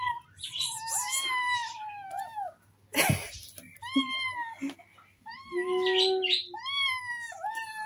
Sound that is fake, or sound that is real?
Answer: real